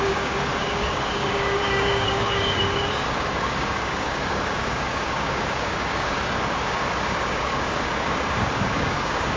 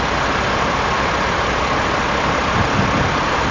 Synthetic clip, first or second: first